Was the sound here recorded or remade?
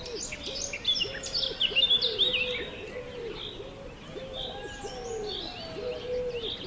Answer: recorded